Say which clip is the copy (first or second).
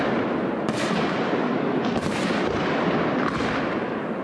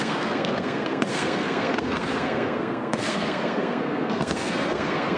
second